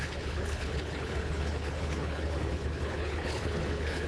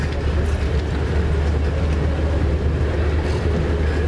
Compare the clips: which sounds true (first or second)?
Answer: second